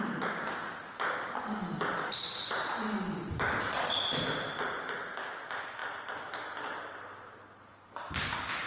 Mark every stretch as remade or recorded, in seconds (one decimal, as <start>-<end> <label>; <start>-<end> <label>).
0.0-8.7 recorded